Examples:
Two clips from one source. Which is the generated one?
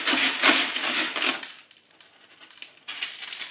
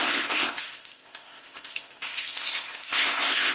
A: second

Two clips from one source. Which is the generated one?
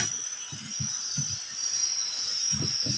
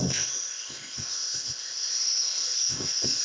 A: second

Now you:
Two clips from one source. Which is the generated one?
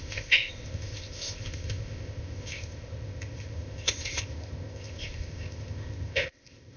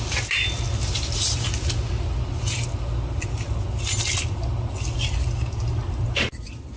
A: first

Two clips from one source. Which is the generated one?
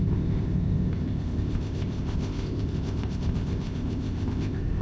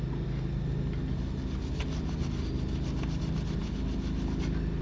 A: first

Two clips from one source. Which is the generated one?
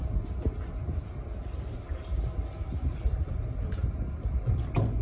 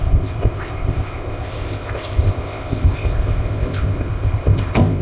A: second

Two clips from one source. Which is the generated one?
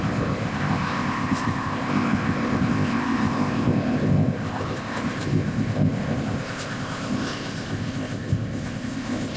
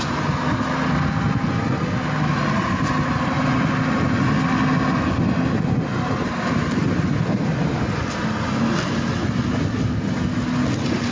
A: first